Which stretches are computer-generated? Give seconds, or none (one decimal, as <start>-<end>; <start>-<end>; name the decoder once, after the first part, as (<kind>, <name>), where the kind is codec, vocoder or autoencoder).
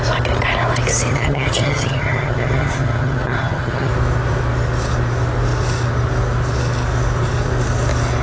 1.1-3.9 (vocoder, HiFi-GAN)